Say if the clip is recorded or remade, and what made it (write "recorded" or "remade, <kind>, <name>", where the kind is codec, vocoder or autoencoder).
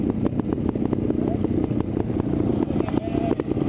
recorded